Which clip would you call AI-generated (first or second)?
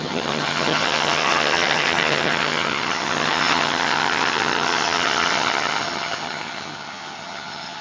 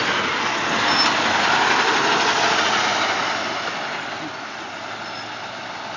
first